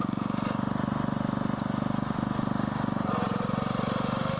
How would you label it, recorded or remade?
recorded